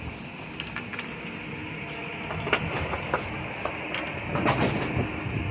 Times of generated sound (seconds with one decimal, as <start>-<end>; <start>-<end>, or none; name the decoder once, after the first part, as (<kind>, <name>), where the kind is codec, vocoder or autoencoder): none